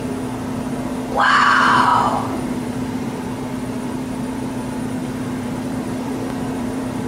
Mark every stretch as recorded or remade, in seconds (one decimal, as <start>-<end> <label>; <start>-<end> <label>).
0.0-1.9 recorded; 1.9-4.5 remade; 4.5-5.0 recorded; 5.0-7.1 remade